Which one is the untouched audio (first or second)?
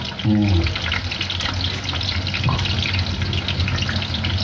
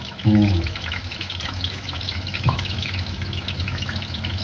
first